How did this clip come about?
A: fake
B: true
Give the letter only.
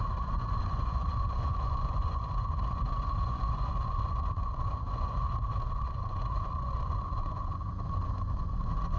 A